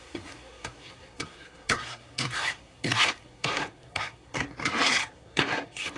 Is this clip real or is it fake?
fake